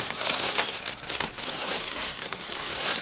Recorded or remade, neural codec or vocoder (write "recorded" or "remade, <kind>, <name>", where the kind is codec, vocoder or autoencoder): remade, codec, SNAC